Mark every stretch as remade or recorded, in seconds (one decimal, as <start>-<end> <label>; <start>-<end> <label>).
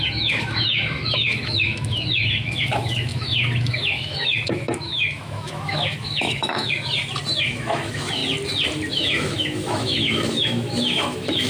0.0-6.9 remade; 6.9-7.4 recorded; 7.4-8.2 remade; 8.2-8.9 recorded; 8.9-11.5 remade